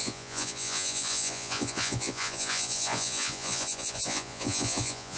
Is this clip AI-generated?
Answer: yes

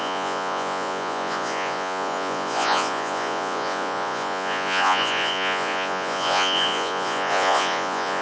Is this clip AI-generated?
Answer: yes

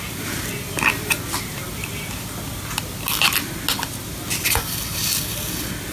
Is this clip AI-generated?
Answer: no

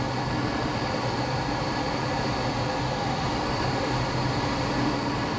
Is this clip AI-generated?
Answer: no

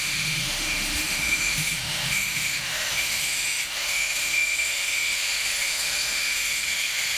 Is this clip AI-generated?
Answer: yes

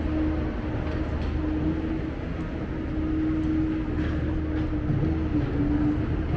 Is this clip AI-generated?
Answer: no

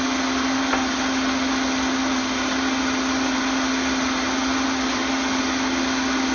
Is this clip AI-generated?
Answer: no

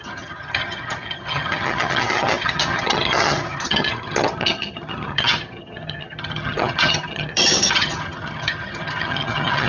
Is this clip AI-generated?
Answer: yes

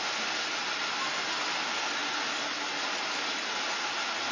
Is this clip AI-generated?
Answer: no